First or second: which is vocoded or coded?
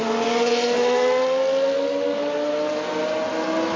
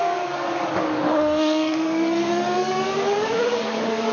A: second